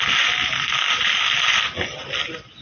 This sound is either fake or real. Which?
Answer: real